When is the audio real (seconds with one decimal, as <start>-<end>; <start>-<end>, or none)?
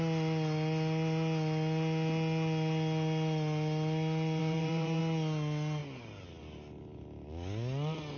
0.0-4.4; 5.0-8.2